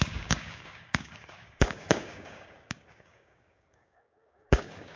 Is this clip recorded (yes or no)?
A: no